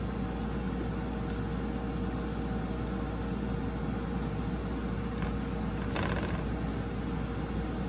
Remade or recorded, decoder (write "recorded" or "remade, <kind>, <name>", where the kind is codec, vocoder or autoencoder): recorded